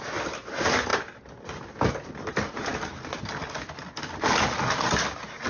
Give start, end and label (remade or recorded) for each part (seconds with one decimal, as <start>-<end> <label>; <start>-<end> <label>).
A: 0.0-5.5 recorded